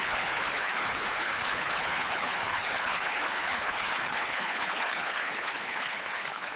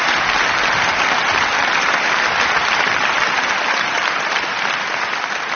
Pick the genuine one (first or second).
second